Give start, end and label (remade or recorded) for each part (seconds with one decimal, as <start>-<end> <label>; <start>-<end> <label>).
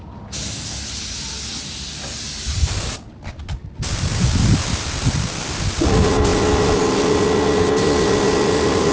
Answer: 0.0-8.9 recorded